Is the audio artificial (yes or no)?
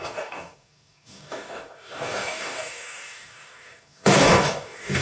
yes